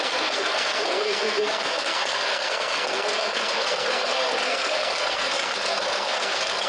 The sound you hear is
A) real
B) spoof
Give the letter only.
B